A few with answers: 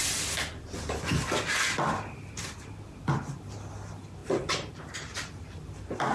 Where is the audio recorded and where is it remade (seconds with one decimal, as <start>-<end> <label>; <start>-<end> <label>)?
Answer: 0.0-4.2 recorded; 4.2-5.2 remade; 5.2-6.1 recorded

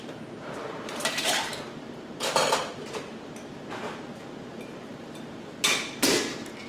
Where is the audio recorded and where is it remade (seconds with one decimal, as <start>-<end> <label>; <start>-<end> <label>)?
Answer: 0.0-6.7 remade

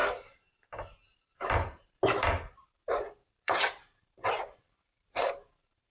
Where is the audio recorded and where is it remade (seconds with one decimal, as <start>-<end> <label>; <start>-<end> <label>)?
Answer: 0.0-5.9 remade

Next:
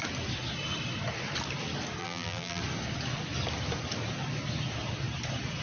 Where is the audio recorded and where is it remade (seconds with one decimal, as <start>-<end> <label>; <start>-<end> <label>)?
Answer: 0.0-2.0 recorded; 2.0-2.6 remade; 2.6-5.6 recorded

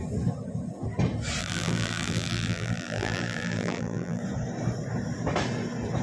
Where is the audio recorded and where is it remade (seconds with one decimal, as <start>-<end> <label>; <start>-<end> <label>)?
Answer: 0.0-1.4 recorded; 1.4-4.2 remade; 4.2-6.0 recorded

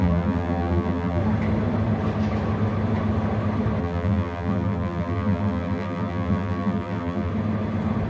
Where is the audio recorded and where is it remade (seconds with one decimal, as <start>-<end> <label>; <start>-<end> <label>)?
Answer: 0.0-1.2 remade; 1.2-3.8 recorded; 3.8-7.3 remade; 7.3-8.1 recorded

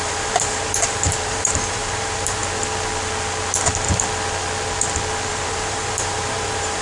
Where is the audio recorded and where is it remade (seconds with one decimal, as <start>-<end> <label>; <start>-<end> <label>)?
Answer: 0.0-2.4 remade; 2.4-5.3 recorded; 5.3-6.8 remade

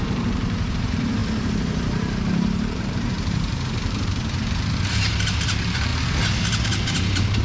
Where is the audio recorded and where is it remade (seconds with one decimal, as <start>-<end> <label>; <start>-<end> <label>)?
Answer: 0.0-5.9 remade; 5.9-6.6 recorded; 6.6-7.4 remade